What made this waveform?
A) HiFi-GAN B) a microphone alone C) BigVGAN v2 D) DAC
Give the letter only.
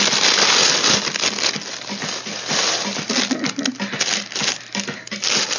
B